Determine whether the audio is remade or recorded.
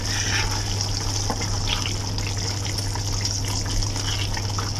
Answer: recorded